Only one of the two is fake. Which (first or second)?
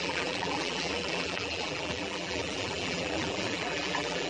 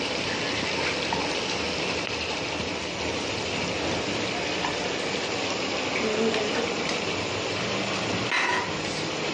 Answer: first